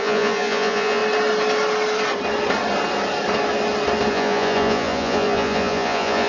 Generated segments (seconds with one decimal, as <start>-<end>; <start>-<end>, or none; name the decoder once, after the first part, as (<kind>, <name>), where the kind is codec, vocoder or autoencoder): 0.0-1.0 (vocoder, Vocos); 4.1-6.3